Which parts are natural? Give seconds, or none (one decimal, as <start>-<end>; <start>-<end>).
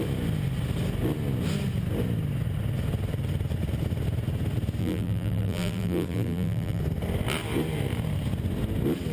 0.0-4.8; 6.8-9.1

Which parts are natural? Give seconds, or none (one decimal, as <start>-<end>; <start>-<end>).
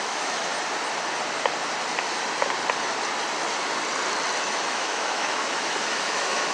0.5-4.4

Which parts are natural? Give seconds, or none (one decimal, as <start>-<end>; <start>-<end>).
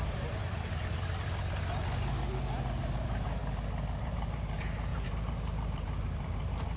0.4-2.8; 3.4-4.0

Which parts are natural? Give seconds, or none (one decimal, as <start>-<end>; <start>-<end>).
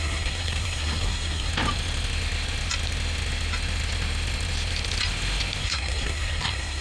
1.5-5.6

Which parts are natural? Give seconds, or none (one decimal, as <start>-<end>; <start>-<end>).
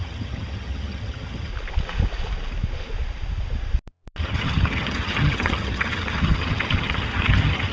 1.5-4.2